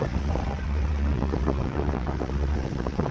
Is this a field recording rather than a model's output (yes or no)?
no